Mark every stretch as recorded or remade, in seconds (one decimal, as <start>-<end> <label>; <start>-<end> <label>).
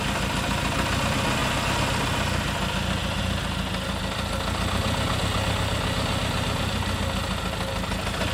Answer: 0.0-8.3 recorded